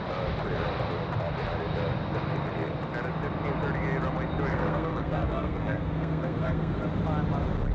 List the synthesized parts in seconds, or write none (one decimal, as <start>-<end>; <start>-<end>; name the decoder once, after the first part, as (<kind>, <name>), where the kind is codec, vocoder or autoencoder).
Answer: 4.5-6.8 (codec, SNAC)